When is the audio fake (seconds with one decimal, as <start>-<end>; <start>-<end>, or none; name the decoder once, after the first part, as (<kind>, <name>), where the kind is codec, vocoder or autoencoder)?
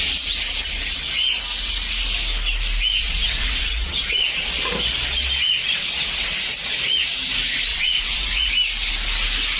3.0-4.7 (vocoder, Vocos); 7.7-8.5